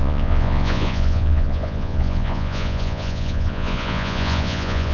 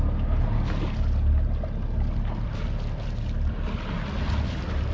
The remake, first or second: first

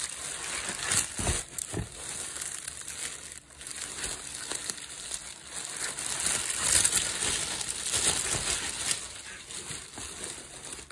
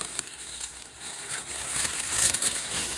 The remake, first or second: second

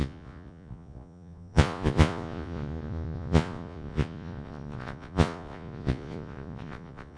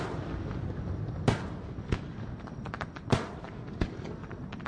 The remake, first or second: first